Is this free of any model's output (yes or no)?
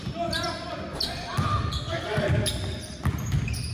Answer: yes